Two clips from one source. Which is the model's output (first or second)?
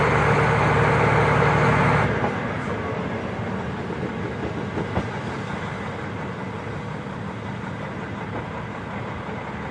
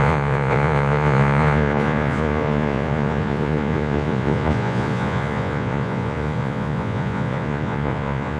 second